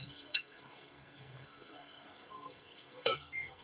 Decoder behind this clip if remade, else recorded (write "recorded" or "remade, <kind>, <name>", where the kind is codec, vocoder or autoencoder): remade, codec, SNAC